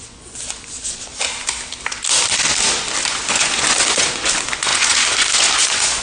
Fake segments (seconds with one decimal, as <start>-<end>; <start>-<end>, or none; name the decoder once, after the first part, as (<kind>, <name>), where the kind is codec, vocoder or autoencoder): 0.0-1.1 (vocoder, Vocos); 3.1-6.0